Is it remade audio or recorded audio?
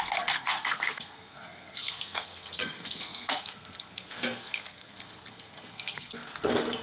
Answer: remade